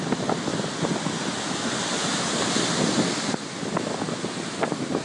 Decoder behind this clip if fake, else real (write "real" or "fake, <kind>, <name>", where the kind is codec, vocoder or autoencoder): real